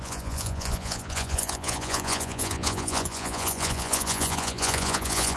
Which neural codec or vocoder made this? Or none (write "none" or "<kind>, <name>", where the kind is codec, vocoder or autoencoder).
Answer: vocoder, Vocos